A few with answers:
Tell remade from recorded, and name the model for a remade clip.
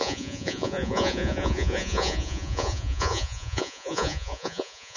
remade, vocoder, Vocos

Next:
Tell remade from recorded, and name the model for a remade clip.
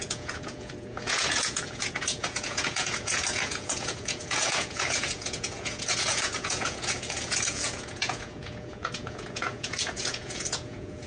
remade, vocoder, Vocos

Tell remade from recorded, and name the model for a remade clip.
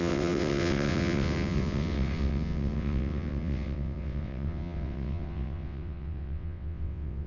remade, vocoder, WaveNeXt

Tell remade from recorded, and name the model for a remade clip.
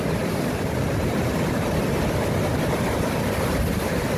recorded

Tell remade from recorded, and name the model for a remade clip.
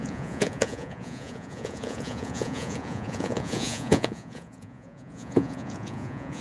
remade, vocoder, Vocos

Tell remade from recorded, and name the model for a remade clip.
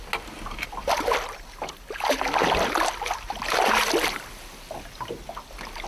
recorded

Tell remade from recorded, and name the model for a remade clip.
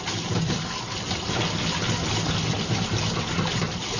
recorded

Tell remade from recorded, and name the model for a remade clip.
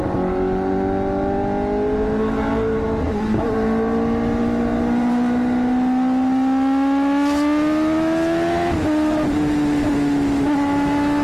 recorded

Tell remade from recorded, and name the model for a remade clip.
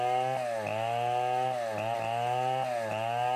recorded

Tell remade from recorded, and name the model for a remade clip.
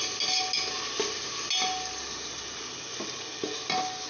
recorded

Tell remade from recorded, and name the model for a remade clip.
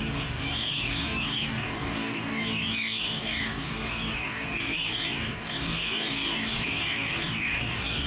remade, codec, DAC